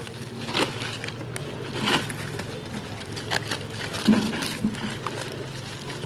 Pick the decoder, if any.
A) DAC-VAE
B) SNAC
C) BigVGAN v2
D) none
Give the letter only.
D